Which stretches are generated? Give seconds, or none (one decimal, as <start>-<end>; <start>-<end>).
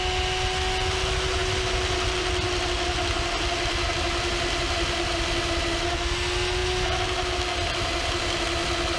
none